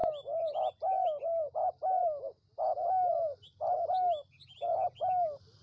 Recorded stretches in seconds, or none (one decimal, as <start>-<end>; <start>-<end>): 0.0-5.6